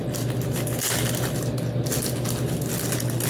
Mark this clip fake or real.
real